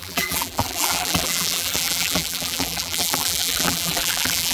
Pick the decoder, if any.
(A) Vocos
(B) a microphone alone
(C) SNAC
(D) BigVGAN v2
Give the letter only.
D